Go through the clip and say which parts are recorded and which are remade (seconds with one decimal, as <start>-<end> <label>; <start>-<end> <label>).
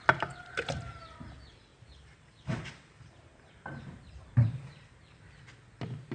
0.0-1.7 recorded; 1.7-5.3 remade; 5.3-6.1 recorded